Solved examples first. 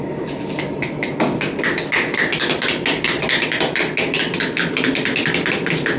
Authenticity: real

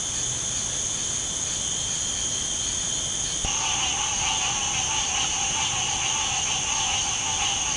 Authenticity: real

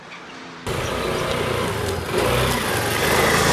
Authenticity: real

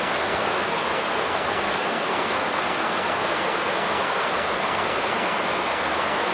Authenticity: fake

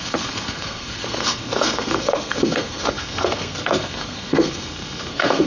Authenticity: fake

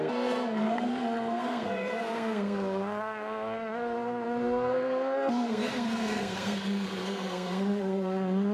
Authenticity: fake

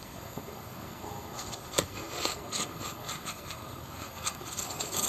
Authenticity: fake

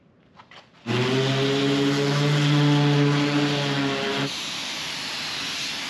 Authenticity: real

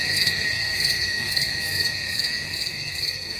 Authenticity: fake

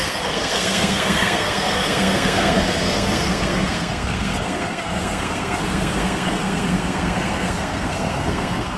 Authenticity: fake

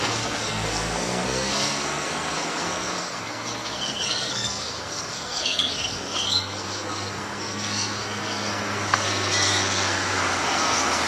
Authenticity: fake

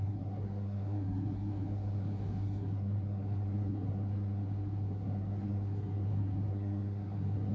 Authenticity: fake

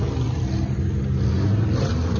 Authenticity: real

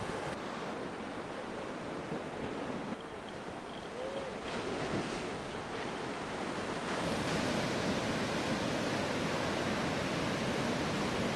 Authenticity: real